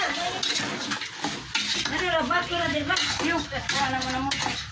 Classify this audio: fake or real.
real